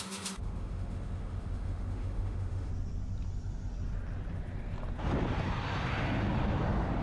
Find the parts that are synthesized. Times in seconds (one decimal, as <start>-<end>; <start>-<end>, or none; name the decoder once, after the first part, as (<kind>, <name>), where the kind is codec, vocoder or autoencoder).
0.0-2.7 (autoencoder, DAC-VAE)